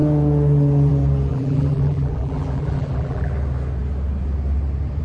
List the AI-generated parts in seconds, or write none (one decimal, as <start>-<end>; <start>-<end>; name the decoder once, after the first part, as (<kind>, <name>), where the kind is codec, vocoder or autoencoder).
1.3-3.3 (vocoder, BigVGAN v2)